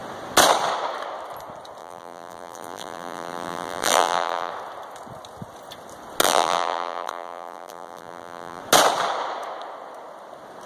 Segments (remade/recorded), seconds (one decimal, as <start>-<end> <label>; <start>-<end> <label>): 0.0-1.8 recorded; 1.8-4.5 remade; 4.5-6.2 recorded; 6.2-8.6 remade; 8.6-10.7 recorded